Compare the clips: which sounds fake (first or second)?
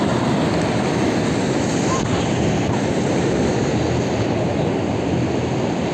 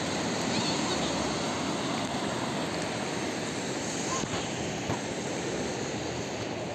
second